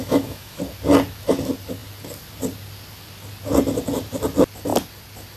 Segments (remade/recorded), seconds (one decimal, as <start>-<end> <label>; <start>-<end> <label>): 0.0-0.6 remade; 0.6-5.4 recorded